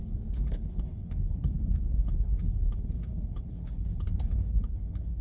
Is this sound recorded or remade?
remade